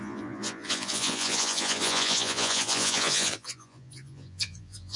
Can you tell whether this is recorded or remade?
remade